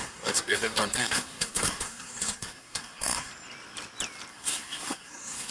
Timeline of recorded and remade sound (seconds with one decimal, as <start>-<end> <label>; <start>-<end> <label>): 0.0-3.3 remade; 3.3-4.3 recorded; 4.3-5.5 remade